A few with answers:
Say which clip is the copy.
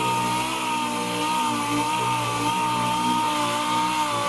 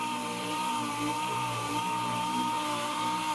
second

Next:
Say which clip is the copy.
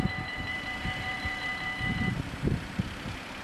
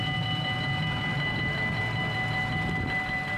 first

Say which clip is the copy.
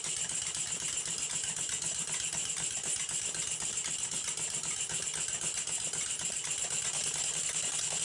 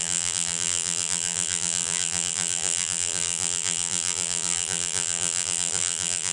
second